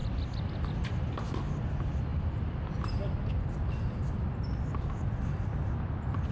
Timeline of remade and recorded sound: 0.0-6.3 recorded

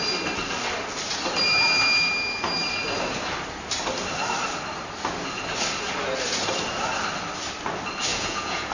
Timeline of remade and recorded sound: 0.0-8.1 recorded; 8.1-8.7 remade

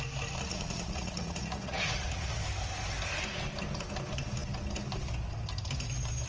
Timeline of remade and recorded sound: 0.0-0.5 recorded; 0.5-2.3 remade; 2.3-6.3 recorded

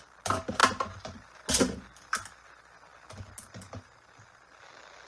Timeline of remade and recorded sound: 0.0-5.1 recorded

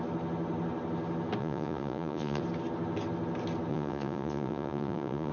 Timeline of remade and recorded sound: 0.0-1.4 recorded; 1.4-2.4 remade; 2.4-3.7 recorded; 3.7-5.3 remade

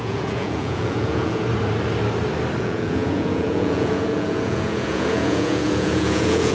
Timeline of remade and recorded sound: 0.0-1.4 remade; 1.4-2.6 recorded; 2.6-6.5 remade

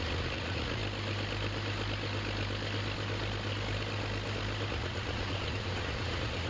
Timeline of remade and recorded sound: 0.0-0.8 remade; 0.8-4.7 recorded; 4.7-6.5 remade